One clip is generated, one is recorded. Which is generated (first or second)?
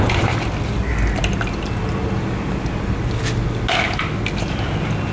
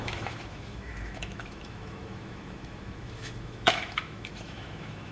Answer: second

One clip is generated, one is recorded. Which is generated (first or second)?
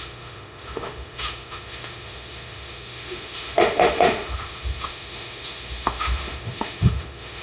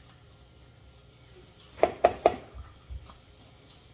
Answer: first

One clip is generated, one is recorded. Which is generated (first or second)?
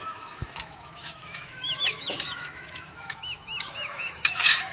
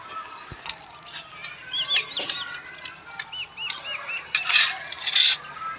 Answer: first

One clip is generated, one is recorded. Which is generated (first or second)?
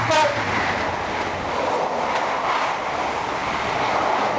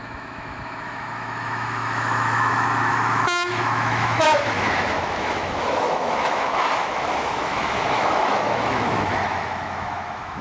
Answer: second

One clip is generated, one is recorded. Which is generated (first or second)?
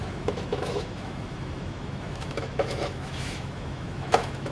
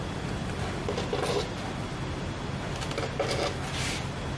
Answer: first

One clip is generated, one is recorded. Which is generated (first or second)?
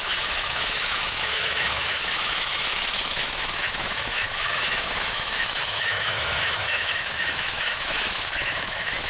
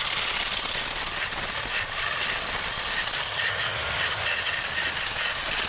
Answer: first